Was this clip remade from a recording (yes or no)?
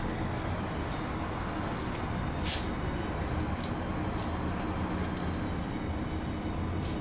no